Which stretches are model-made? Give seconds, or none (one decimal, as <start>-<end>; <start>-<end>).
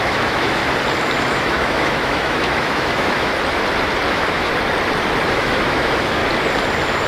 0.0-0.6; 1.2-3.3; 4.1-4.5; 5.3-6.2